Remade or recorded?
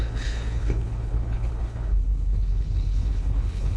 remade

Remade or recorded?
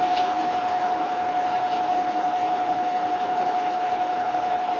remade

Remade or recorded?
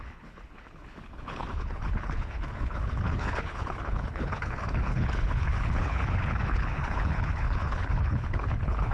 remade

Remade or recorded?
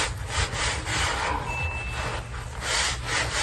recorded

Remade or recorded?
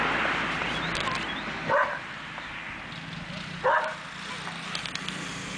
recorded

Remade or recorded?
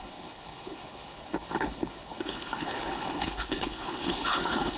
remade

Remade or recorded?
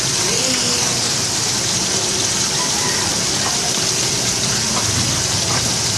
recorded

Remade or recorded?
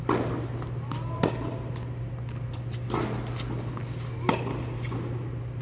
recorded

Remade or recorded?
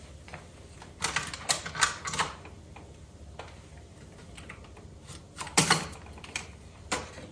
recorded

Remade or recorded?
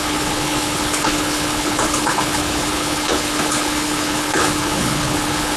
remade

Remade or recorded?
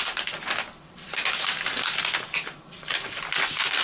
recorded